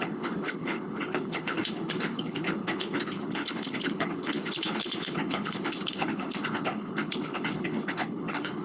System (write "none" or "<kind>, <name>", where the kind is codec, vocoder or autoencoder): codec, HILCodec